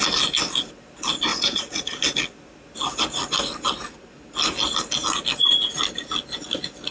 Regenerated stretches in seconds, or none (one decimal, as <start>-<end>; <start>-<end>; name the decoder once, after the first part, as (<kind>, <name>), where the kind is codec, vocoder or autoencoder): 1.3-2.0 (vocoder, Vocos)